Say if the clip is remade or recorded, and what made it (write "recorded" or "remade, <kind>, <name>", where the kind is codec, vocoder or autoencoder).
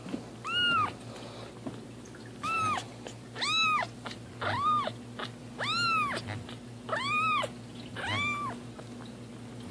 recorded